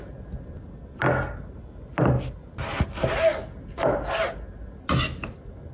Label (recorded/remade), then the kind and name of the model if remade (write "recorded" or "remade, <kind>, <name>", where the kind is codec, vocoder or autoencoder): recorded